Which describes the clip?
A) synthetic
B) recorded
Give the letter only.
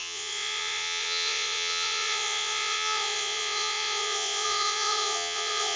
A